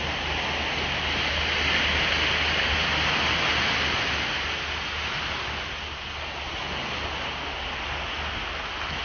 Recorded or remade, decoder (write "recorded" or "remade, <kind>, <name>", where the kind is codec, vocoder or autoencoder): recorded